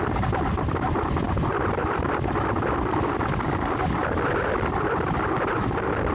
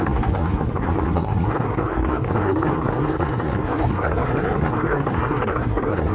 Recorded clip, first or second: first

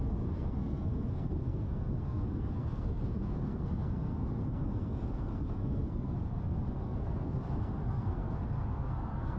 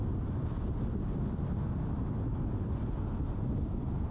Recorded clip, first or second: second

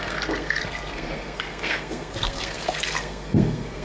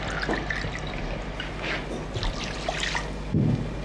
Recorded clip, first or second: second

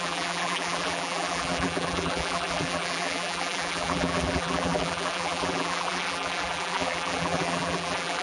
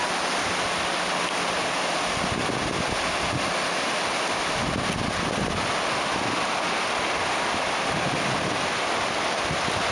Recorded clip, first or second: second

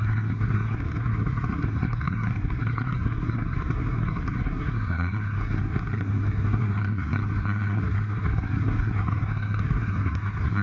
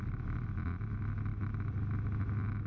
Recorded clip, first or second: second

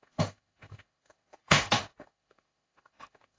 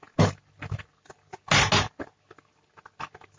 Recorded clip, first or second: second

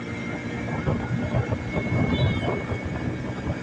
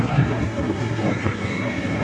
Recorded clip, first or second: first